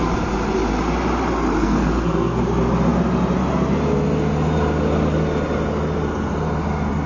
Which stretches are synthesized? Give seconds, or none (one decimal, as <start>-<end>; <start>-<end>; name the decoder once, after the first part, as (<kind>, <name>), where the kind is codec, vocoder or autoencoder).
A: 1.6-2.4 (codec, SNAC)